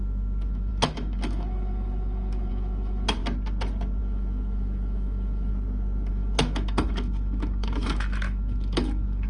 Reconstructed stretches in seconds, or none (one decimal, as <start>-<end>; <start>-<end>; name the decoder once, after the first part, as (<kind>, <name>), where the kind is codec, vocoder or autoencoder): 0.0-3.2 (autoencoder, DAC-VAE); 4.0-5.5; 6.1-9.3